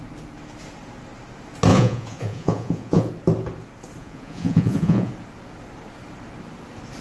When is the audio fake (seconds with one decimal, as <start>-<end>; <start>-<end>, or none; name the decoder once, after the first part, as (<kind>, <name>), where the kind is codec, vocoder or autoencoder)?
1.7-3.1 (vocoder, Vocos); 4.0-5.1